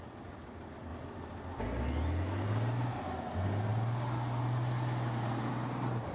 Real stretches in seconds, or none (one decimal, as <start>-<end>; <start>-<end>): 0.0-6.1